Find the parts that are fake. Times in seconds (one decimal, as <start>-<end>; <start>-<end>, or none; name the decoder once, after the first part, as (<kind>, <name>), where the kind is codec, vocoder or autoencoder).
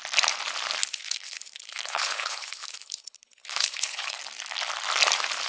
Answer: 0.9-4.2 (codec, HILCodec)